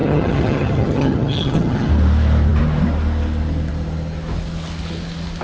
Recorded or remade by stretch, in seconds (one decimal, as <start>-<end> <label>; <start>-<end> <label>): 0.0-1.9 remade; 1.9-5.4 recorded